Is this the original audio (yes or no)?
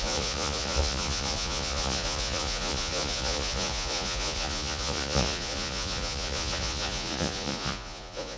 no